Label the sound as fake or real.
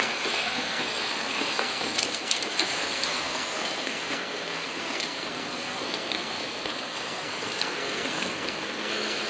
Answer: fake